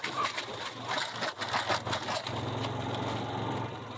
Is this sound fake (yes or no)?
no